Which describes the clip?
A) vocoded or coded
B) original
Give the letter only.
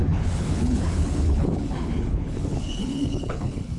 A